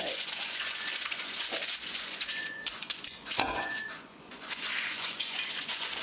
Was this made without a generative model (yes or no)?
no